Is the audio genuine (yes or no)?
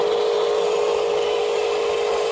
yes